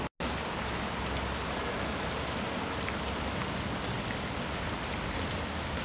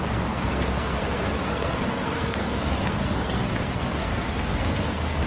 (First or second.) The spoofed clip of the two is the second